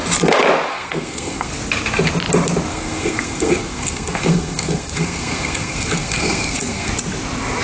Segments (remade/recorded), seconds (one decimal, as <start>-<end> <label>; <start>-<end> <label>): 0.0-0.7 recorded; 0.7-1.5 remade; 1.5-2.7 recorded; 2.7-6.9 remade; 6.9-7.6 recorded

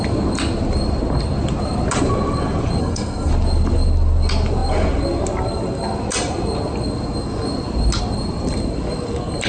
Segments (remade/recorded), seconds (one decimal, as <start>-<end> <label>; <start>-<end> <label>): 0.0-2.8 recorded; 2.8-3.3 remade; 3.3-9.5 recorded

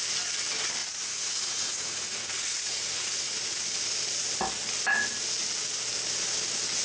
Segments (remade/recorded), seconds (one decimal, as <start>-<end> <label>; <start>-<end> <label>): 0.0-0.8 recorded; 0.8-3.6 remade; 3.6-6.8 recorded

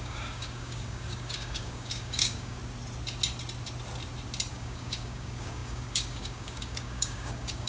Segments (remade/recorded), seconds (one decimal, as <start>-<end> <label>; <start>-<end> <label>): 0.0-2.6 remade; 2.6-4.5 recorded; 4.5-7.7 remade

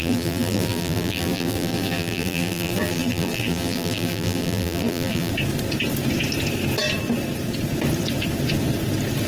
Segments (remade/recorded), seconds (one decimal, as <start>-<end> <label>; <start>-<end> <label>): 0.0-5.3 remade; 5.3-9.3 recorded

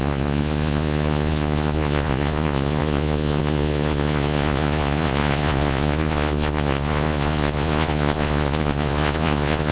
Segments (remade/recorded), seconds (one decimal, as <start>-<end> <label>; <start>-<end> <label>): 0.0-9.7 remade

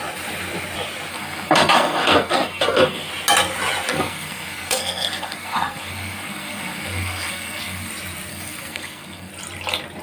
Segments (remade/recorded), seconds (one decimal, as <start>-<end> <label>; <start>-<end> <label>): 0.0-1.1 recorded; 1.1-3.1 remade; 3.1-3.9 recorded; 3.9-7.9 remade; 7.9-8.3 recorded; 8.3-9.3 remade; 9.3-10.0 recorded